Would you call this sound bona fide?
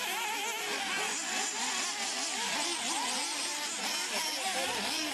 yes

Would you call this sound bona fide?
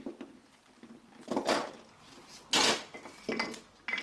yes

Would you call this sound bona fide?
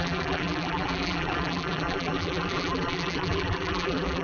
no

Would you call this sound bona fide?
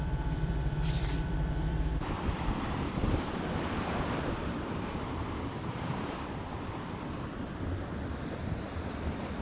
no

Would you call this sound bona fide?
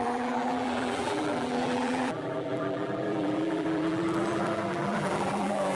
no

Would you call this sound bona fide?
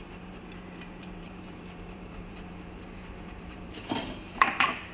no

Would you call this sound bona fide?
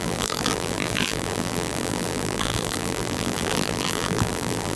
no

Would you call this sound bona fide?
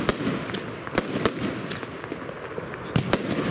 yes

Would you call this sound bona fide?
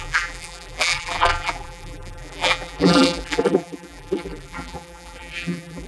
no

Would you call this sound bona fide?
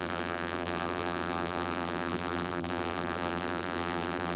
no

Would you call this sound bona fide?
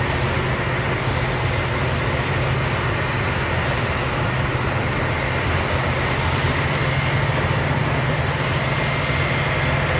yes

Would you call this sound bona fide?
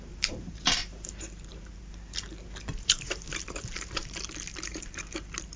no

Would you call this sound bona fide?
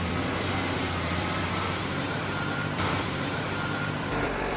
no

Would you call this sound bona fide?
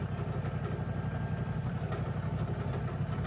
yes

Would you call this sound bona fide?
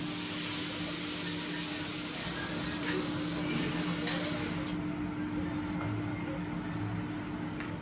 yes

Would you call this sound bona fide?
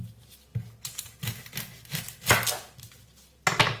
yes